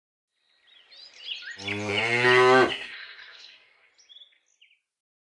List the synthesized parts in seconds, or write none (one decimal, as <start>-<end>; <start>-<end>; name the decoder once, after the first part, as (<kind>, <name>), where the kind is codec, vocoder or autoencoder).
2.7-3.9 (codec, SNAC)